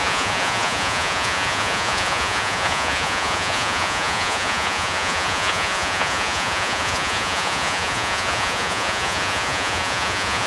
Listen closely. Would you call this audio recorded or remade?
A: remade